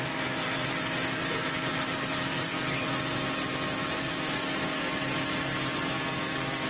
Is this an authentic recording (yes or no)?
yes